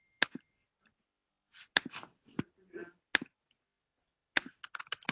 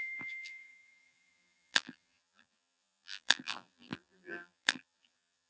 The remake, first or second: second